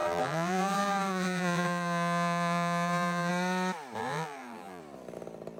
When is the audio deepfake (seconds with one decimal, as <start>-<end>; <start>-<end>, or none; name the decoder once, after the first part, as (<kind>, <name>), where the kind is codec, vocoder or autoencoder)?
0.0-3.3 (vocoder, BigVGAN v2); 4.0-4.8